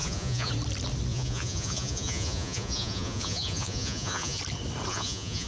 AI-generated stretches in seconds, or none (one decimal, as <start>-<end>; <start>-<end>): 0.0-0.5; 1.1-4.4; 4.9-5.5